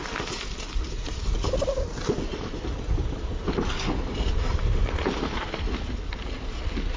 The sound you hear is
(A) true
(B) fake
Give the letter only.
A